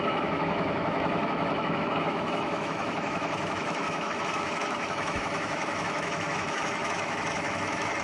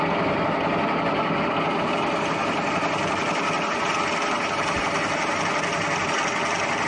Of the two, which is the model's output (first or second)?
first